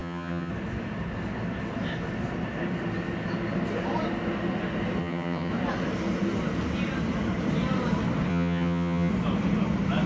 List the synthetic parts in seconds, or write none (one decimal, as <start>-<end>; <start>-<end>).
0.0-0.5; 5.0-5.5; 8.3-9.1